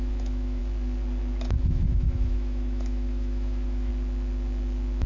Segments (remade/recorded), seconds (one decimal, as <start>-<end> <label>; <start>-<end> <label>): 0.0-0.6 remade; 0.6-1.6 recorded; 1.6-3.9 remade; 3.9-5.1 recorded

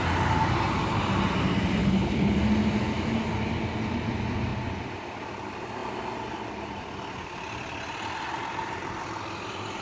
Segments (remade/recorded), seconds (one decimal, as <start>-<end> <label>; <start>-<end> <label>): 0.0-1.8 recorded; 1.8-2.4 remade; 2.4-9.8 recorded

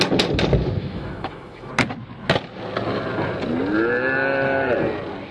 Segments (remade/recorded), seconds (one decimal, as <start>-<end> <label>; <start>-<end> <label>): 0.0-0.8 recorded; 0.8-1.7 remade; 1.7-5.3 recorded

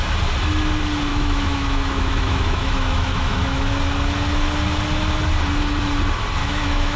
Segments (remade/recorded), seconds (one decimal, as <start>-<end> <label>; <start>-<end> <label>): 0.0-1.1 recorded; 1.1-3.7 remade; 3.7-6.4 recorded; 6.4-7.0 remade

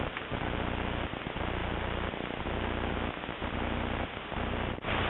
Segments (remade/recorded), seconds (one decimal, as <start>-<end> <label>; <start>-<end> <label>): 0.0-5.1 recorded

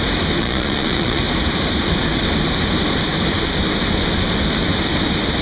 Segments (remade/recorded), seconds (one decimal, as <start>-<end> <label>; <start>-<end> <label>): 0.0-0.4 recorded; 0.4-1.2 remade; 1.2-5.4 recorded

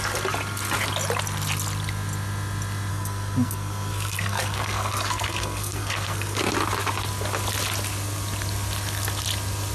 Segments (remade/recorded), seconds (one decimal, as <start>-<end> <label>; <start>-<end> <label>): 0.0-2.9 recorded; 2.9-6.4 remade; 6.4-9.7 recorded

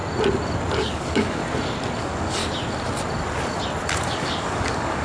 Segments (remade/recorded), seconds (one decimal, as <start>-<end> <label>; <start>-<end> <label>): 0.0-0.8 recorded; 0.8-1.4 remade; 1.4-2.0 recorded; 2.0-2.4 remade; 2.4-4.0 recorded; 4.0-5.0 remade